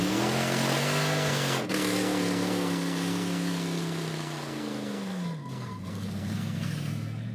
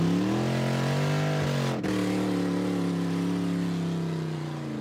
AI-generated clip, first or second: first